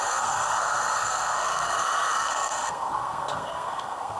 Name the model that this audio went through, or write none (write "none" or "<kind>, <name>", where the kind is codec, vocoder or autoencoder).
codec, SNAC